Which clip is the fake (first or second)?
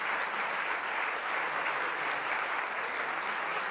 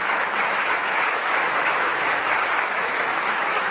second